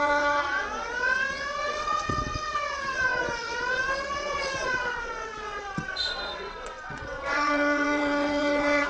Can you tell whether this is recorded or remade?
remade